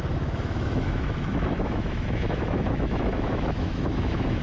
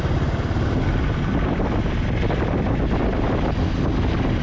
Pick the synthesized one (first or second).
first